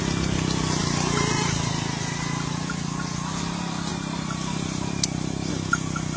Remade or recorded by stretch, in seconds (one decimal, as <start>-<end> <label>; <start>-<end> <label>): 0.0-3.9 recorded; 3.9-5.5 remade; 5.5-6.2 recorded